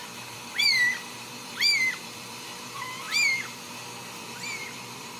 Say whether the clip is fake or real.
fake